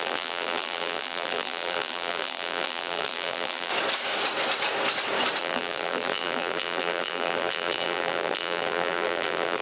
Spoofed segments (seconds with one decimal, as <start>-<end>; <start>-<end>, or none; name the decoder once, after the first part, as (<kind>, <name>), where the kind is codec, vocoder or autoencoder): 0.0-3.7 (vocoder, BigVGAN v2); 5.4-9.6